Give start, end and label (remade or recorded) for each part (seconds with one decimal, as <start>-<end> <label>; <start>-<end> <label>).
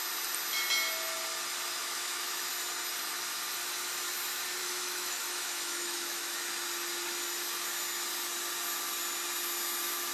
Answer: 0.0-1.8 recorded; 1.8-2.5 remade; 2.5-4.6 recorded; 4.6-6.4 remade; 6.4-10.1 recorded